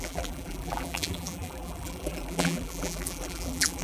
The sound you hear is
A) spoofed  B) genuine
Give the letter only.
A